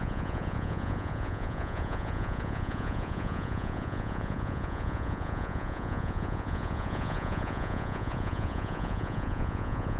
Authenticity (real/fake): fake